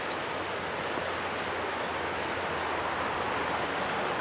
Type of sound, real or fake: real